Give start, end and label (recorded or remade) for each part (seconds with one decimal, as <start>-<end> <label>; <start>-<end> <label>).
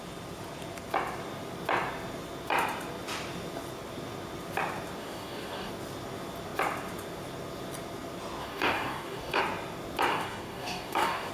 0.0-5.0 recorded; 5.0-5.7 remade; 5.7-8.4 recorded; 8.4-9.4 remade; 9.4-10.1 recorded; 10.1-11.3 remade